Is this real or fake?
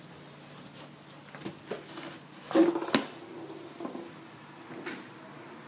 real